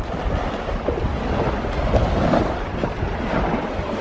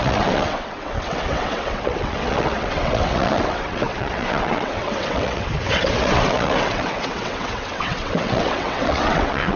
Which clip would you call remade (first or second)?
second